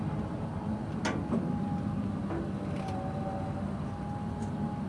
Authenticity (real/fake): real